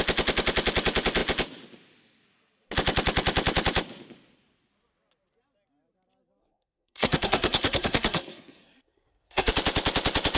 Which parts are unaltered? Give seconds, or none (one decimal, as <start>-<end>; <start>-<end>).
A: 0.0-6.4; 9.5-10.4